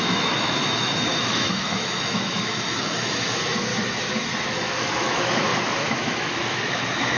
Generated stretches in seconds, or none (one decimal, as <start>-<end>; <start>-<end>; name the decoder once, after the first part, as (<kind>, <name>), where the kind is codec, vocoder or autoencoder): 0.0-3.7 (autoencoder, DAC-VAE); 4.4-7.2